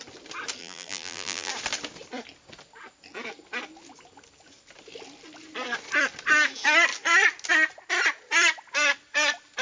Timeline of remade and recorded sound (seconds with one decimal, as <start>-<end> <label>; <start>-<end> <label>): 0.0-0.6 recorded; 0.6-1.5 remade; 1.5-9.6 recorded